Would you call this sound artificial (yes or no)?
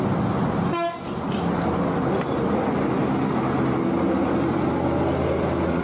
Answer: no